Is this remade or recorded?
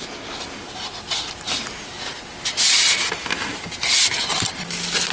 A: recorded